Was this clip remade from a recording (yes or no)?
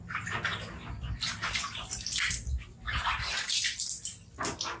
no